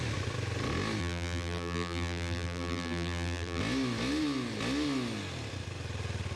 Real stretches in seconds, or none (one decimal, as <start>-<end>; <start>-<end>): 0.0-1.0; 3.6-6.4